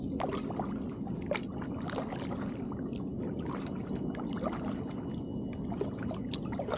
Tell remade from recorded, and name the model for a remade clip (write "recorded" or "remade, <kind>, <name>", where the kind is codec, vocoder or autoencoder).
recorded